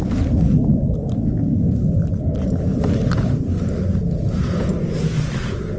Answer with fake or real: real